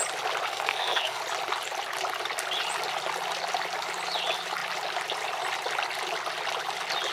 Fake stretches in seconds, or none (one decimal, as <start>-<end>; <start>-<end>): 0.5-1.2